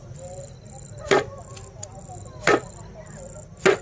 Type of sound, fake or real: real